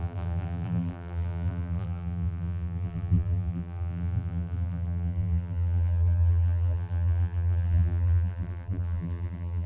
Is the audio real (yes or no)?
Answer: no